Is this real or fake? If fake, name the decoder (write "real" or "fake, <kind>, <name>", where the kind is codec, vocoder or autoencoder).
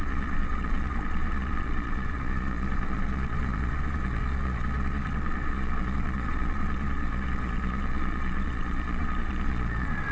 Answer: fake, vocoder, Vocos